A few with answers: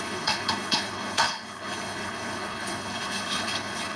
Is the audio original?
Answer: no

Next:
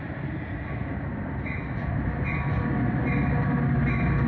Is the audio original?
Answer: yes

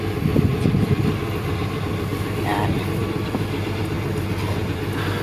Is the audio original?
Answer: yes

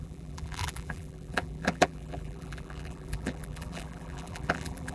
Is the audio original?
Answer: no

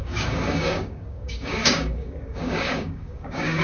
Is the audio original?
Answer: no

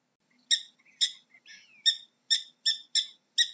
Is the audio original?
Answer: yes